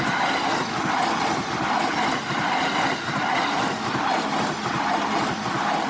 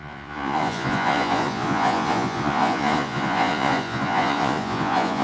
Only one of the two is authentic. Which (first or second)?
first